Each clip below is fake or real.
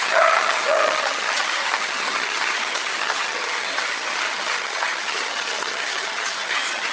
fake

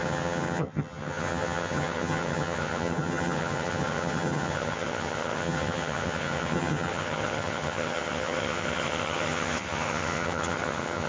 fake